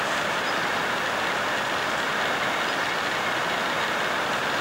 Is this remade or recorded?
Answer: recorded